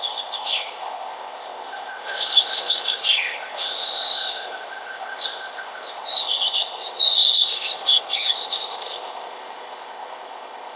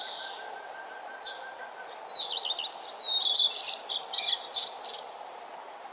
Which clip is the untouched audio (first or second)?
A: second